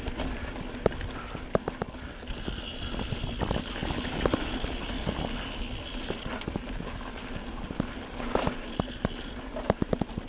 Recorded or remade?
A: recorded